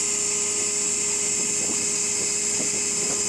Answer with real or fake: real